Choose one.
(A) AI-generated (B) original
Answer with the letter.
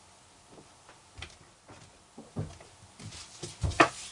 B